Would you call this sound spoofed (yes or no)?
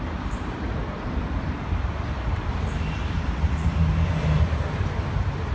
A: yes